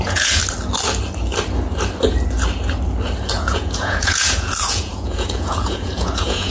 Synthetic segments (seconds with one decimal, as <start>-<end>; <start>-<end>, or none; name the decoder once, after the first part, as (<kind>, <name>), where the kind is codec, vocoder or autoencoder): 0.0-0.4 (vocoder, Vocos); 3.4-6.5